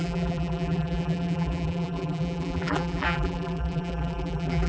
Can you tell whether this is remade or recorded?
remade